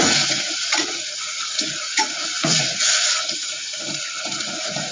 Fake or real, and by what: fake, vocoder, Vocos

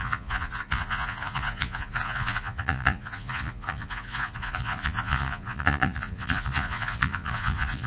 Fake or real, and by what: fake, vocoder, Vocos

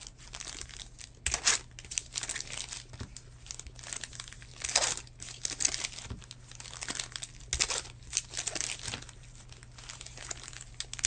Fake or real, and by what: real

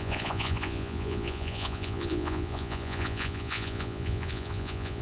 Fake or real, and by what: fake, vocoder, Vocos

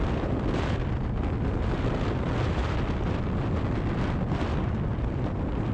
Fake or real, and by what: real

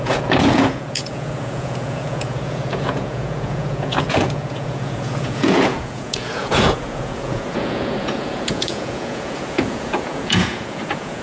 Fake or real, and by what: fake, vocoder, Vocos